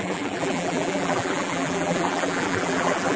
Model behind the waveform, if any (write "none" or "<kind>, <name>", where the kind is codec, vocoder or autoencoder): vocoder, BigVGAN v2